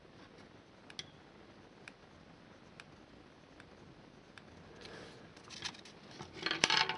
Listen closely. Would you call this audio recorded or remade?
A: recorded